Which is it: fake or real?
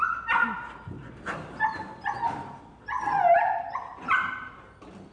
real